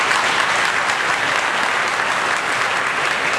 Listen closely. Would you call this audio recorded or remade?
recorded